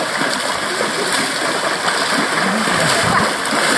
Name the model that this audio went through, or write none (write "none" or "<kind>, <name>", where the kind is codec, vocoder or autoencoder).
none